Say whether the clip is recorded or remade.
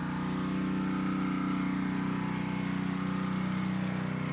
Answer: recorded